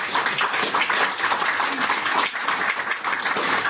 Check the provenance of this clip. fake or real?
real